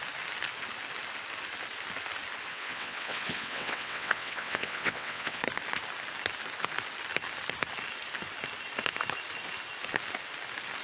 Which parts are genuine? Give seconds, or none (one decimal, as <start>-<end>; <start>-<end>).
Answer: 0.0-2.5; 5.4-10.8